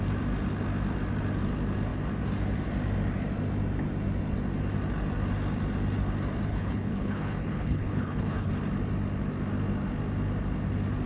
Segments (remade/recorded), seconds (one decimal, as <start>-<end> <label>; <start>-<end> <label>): 0.0-6.5 recorded; 6.5-8.5 remade; 8.5-11.1 recorded